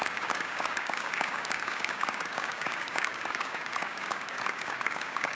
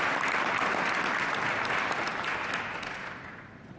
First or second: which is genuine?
second